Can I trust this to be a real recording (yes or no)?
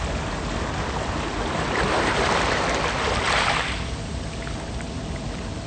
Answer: yes